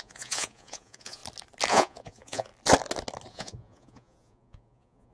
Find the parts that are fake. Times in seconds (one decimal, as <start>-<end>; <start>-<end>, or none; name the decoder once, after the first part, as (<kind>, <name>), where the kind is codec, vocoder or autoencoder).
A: 0.0-1.2 (vocoder, Vocos); 1.7-2.5; 3.3-5.1